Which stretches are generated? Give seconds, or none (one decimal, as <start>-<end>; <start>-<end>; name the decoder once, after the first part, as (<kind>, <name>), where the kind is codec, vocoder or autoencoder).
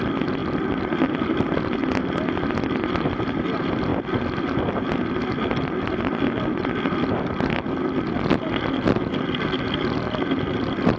none